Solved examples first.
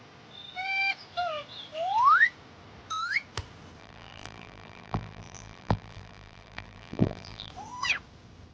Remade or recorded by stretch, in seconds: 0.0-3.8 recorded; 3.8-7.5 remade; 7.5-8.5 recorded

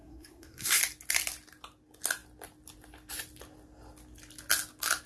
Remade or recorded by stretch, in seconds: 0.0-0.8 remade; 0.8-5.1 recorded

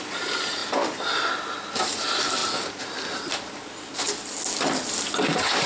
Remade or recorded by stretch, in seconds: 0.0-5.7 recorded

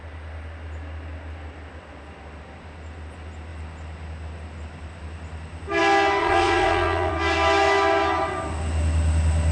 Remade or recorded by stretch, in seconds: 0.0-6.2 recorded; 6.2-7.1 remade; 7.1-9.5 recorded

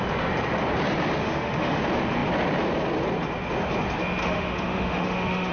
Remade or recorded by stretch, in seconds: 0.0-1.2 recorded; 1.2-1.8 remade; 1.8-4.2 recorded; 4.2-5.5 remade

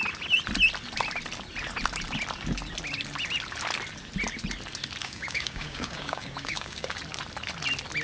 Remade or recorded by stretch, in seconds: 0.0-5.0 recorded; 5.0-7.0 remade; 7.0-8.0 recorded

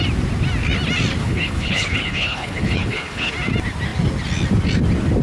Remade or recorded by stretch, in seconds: 0.0-1.2 recorded; 1.2-3.3 remade; 3.3-5.2 recorded